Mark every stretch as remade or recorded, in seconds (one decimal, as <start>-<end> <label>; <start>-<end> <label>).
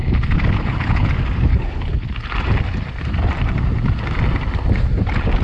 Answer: 0.0-1.1 remade; 1.1-1.5 recorded; 1.5-2.1 remade; 2.1-5.4 recorded